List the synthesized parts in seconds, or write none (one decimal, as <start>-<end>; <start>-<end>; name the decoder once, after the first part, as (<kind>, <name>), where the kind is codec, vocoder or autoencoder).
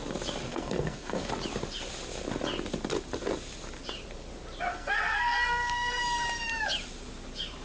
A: 0.5-1.3 (codec, SNAC); 4.7-6.0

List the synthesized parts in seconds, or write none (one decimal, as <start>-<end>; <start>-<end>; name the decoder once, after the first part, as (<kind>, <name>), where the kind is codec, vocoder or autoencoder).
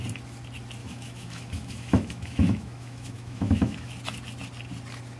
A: 0.8-3.9 (autoencoder, DAC-VAE)